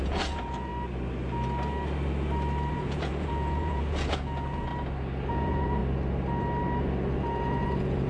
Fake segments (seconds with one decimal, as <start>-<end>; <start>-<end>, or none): 0.0-0.7; 2.7-4.7; 5.3-5.8; 7.2-8.1